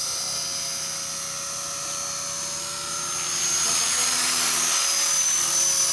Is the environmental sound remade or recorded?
recorded